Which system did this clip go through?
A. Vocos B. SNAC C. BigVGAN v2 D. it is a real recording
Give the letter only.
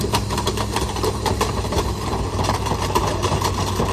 C